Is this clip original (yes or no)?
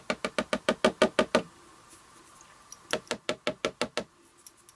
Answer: yes